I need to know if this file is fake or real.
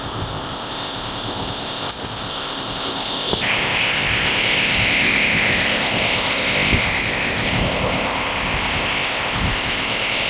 fake